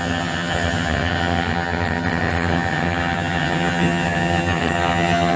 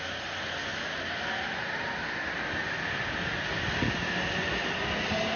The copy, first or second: first